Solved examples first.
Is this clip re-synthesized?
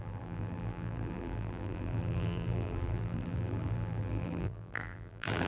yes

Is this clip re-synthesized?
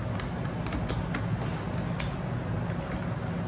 no